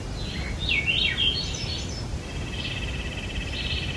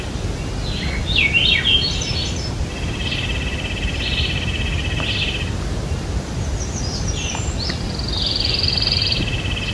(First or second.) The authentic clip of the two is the first